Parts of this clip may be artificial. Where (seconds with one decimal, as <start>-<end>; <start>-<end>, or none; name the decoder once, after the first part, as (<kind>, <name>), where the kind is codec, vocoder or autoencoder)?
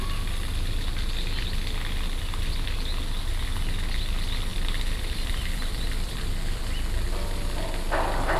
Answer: 4.5-6.6 (vocoder, BigVGAN v2)